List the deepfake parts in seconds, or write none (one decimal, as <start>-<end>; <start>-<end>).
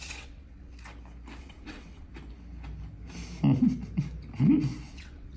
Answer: 0.0-0.7; 1.4-2.1; 4.9-5.4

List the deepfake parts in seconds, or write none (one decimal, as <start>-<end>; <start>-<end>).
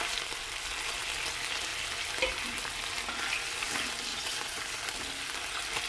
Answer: 4.1-4.6